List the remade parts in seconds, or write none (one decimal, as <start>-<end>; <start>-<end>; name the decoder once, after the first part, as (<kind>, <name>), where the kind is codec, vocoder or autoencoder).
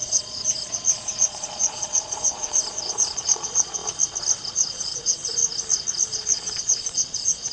0.0-3.8 (vocoder, Vocos); 4.5-5.4; 6.1-7.5